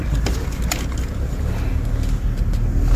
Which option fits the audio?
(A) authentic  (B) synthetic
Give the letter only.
A